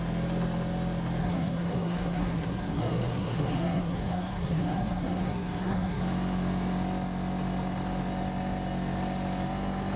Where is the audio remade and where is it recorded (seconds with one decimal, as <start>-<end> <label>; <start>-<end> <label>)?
0.0-1.2 recorded; 1.2-6.0 remade; 6.0-10.0 recorded

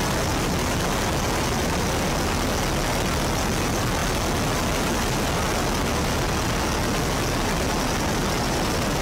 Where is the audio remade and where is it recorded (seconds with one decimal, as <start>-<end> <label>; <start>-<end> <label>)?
0.0-9.0 recorded

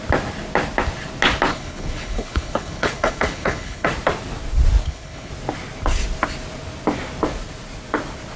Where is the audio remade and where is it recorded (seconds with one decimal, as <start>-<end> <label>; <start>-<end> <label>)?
0.0-1.5 recorded; 1.5-3.9 remade; 3.9-4.8 recorded; 4.8-5.3 remade; 5.3-8.4 recorded

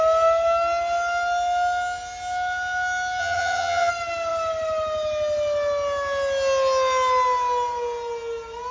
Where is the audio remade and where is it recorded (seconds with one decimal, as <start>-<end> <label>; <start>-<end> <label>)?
0.0-3.2 recorded; 3.2-3.9 remade; 3.9-8.7 recorded